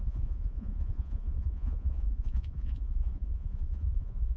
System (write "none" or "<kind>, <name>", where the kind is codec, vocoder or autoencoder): vocoder, Vocos